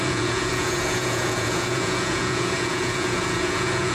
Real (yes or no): no